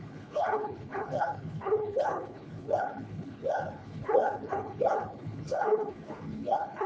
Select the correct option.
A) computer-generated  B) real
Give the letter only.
A